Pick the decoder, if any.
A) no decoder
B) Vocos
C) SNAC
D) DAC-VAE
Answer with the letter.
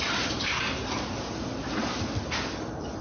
A